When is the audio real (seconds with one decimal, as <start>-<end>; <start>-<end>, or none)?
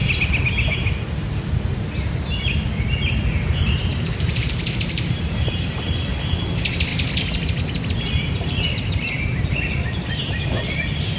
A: 0.0-3.9; 5.7-9.3; 10.3-11.2